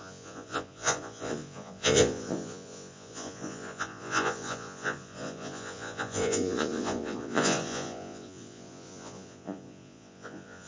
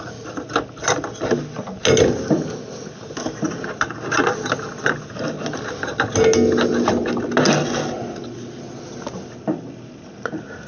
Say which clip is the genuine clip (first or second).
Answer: second